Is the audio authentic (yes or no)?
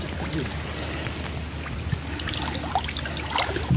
yes